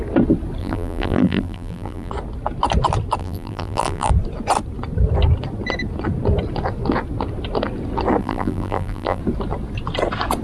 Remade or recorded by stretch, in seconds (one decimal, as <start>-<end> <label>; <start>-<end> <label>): 0.0-0.6 recorded; 0.6-2.1 remade; 2.1-3.2 recorded; 3.2-4.1 remade; 4.1-8.2 recorded; 8.2-9.2 remade; 9.2-10.4 recorded